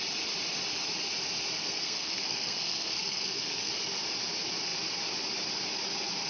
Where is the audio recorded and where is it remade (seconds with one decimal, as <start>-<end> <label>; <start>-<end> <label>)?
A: 0.0-1.6 recorded; 1.6-3.7 remade; 3.7-6.3 recorded